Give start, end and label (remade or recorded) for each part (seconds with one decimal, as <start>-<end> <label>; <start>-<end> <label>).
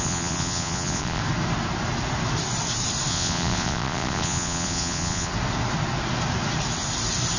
0.0-1.2 remade; 1.2-3.1 recorded; 3.1-5.3 remade; 5.3-7.4 recorded